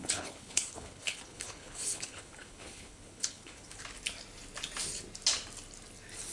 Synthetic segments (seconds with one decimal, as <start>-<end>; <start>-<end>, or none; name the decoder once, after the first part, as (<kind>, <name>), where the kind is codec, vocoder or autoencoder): 0.0-3.8 (codec, HILCodec)